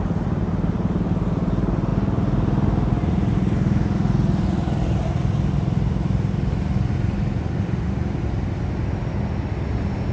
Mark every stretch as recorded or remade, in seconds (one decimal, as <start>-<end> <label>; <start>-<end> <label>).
0.0-10.1 recorded